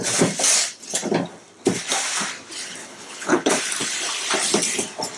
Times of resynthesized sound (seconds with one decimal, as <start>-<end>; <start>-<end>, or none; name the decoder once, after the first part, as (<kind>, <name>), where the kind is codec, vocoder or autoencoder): 2.8-3.5 (codec, HILCodec)